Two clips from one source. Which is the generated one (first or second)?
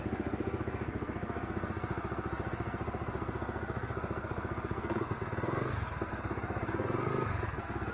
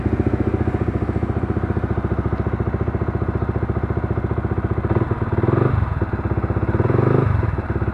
first